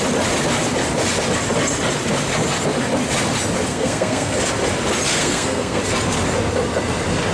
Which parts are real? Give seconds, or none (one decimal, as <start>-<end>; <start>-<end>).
0.0-3.7; 4.4-5.2; 5.8-7.3